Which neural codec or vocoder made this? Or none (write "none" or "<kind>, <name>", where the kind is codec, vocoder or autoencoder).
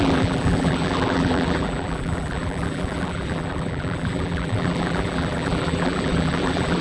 vocoder, BigVGAN v2